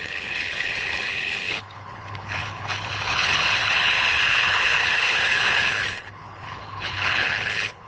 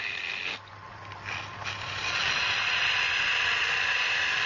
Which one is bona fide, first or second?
second